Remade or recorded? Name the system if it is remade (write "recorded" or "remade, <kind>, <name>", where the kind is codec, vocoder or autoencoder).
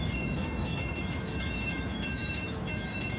remade, autoencoder, DAC-VAE